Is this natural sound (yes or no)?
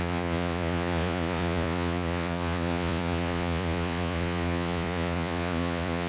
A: no